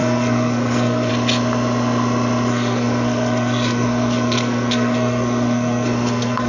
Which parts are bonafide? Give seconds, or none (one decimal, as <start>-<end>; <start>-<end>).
1.1-2.5